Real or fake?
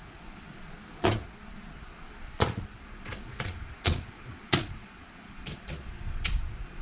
fake